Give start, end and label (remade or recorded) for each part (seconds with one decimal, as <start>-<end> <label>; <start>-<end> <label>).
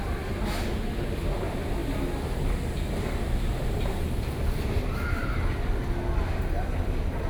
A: 0.0-3.5 recorded; 3.5-4.4 remade; 4.4-7.3 recorded